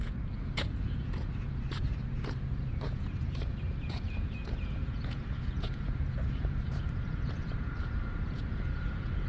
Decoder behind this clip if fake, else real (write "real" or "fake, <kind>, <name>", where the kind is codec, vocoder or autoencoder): fake, vocoder, Vocos